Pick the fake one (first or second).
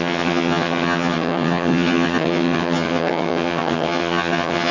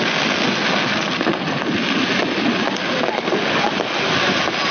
first